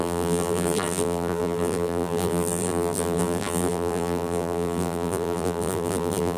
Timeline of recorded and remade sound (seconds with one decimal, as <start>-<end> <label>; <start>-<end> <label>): 0.0-6.4 remade